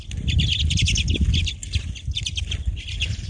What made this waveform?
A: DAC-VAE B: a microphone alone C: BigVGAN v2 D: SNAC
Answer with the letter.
B